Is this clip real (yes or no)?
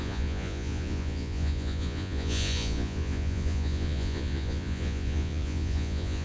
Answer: no